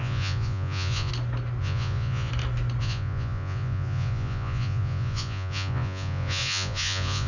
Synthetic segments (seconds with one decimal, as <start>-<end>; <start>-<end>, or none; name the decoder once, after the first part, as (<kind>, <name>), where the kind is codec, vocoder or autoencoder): 0.0-1.1 (vocoder, Vocos); 1.6-2.3; 2.8-7.3